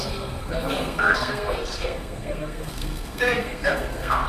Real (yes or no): no